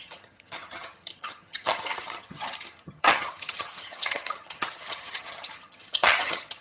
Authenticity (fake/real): fake